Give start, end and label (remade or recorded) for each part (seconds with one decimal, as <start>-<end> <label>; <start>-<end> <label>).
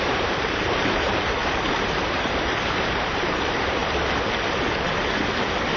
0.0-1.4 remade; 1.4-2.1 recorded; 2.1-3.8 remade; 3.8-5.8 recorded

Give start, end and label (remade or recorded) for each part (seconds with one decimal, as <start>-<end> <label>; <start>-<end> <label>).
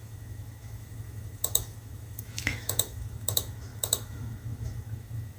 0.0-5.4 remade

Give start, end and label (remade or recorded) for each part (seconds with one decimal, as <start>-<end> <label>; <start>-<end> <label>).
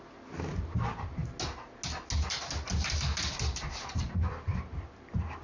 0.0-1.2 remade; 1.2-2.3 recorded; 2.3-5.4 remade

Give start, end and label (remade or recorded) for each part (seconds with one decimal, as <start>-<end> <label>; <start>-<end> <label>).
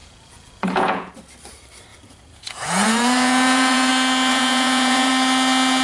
0.0-1.1 remade; 1.1-1.9 recorded; 1.9-3.9 remade; 3.9-4.3 recorded; 4.3-5.1 remade; 5.1-5.8 recorded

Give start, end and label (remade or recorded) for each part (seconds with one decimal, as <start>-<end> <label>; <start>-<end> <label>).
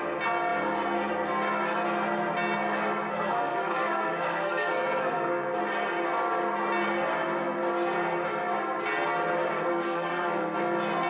0.0-3.1 recorded; 3.1-5.6 remade; 5.6-9.5 recorded; 9.5-10.6 remade; 10.6-11.1 recorded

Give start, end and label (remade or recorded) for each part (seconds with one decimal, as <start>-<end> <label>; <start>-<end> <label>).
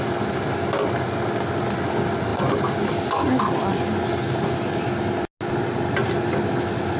0.0-7.0 recorded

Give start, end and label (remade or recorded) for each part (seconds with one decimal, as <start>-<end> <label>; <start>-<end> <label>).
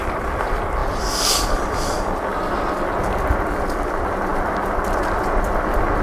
0.0-6.0 recorded